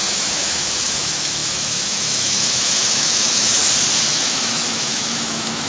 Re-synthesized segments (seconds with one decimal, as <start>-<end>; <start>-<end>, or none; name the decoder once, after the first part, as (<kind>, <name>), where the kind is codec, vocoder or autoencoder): 0.0-3.6 (autoencoder, DAC-VAE); 4.1-5.7